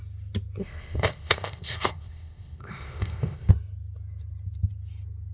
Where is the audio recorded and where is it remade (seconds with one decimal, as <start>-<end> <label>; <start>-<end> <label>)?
0.0-0.6 recorded; 0.6-3.5 remade; 3.5-5.3 recorded